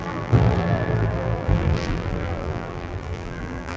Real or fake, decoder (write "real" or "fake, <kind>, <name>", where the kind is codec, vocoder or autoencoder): fake, vocoder, BigVGAN v2